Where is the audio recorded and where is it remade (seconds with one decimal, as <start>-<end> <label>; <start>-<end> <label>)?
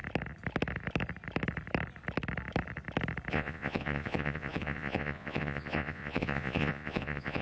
0.0-3.3 recorded; 3.3-7.4 remade